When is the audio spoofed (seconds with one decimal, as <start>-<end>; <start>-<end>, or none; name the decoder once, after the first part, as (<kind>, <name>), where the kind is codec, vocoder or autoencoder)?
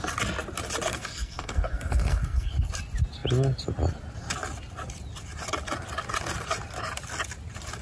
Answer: 0.9-2.7 (codec, SNAC)